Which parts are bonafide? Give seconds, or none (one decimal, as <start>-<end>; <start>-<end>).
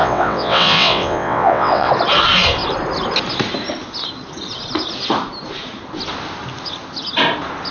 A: 1.9-7.7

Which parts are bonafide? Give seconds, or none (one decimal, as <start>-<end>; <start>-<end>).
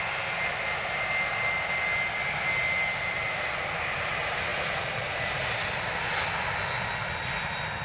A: 0.0-7.8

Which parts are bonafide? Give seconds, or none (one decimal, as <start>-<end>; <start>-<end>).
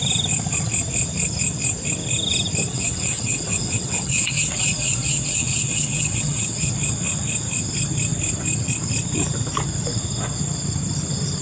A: 0.0-2.7; 6.7-11.4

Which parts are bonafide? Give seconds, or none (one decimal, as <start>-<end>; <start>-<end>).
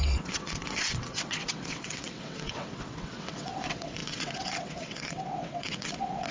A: none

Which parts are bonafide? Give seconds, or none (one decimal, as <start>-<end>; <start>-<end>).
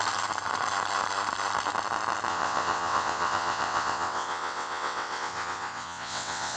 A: 0.0-2.3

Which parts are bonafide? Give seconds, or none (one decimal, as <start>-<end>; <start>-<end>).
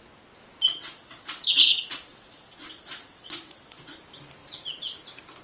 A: 0.0-0.7; 3.9-5.4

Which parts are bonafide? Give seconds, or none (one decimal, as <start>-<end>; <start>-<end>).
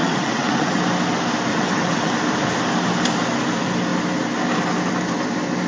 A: 0.8-1.5; 2.1-5.7